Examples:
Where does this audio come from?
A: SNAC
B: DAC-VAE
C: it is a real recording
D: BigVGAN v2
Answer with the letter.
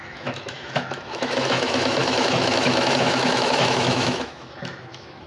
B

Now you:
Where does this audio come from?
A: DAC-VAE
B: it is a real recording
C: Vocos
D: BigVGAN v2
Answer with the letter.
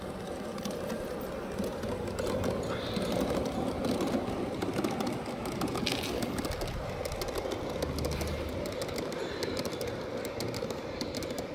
B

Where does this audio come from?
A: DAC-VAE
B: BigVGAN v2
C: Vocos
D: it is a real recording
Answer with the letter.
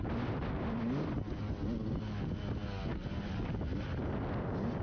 D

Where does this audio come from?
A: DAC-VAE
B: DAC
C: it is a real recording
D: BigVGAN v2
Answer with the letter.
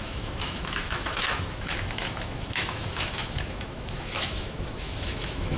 A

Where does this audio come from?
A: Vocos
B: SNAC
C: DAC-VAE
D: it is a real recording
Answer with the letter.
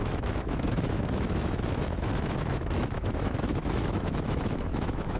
C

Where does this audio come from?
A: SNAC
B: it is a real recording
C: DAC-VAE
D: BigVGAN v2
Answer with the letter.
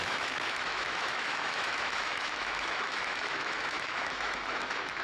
C